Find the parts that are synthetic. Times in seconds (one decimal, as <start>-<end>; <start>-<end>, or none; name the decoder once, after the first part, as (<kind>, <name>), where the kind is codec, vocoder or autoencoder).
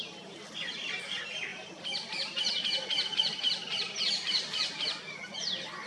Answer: 1.5-5.0 (vocoder, BigVGAN v2)